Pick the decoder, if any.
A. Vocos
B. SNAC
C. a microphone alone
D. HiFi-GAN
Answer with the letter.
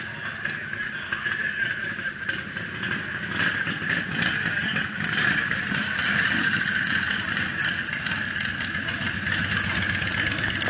C